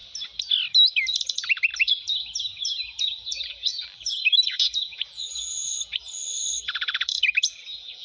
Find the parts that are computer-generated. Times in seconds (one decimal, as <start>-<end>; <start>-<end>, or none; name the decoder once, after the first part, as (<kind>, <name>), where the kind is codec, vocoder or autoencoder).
1.2-8.0 (vocoder, BigVGAN v2)